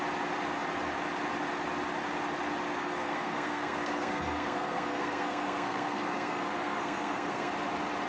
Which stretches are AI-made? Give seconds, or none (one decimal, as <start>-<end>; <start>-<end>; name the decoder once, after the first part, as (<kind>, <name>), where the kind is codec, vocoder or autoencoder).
2.8-7.5 (codec, SNAC)